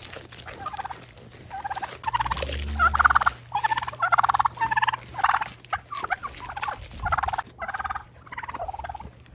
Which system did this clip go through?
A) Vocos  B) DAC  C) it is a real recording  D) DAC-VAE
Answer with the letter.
C